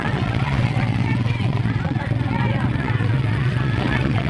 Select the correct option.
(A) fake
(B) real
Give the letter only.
A